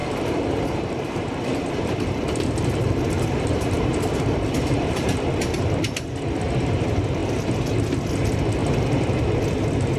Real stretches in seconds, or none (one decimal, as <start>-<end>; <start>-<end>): 5.2-10.0